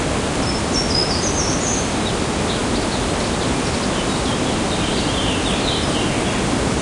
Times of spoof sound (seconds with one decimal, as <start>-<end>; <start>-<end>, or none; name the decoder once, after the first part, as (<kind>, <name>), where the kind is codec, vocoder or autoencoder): 1.0-2.2 (vocoder, BigVGAN v2)